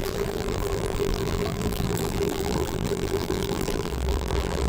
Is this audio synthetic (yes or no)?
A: yes